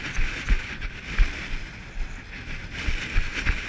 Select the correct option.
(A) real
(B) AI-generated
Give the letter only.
A